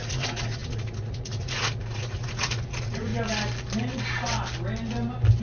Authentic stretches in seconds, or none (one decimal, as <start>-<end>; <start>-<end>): 3.1-5.4

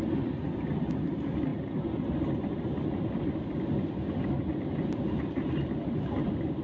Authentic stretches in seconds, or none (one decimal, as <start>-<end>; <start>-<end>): 0.0-6.6

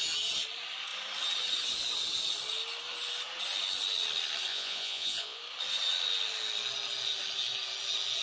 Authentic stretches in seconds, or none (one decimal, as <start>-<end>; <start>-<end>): 0.0-4.5; 5.4-8.2

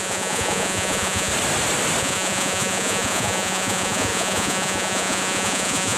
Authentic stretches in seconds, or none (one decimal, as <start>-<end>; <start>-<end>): 1.3-2.0

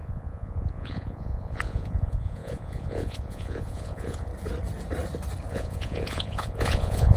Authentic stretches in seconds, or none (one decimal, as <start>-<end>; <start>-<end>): 4.3-5.5

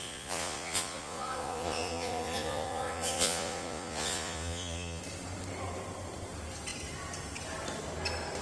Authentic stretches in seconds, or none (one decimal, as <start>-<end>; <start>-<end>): 5.0-8.4

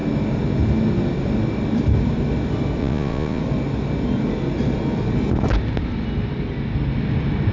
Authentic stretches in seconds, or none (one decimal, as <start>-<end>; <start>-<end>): 0.0-2.8; 3.4-7.5